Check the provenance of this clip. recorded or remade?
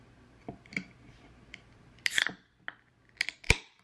recorded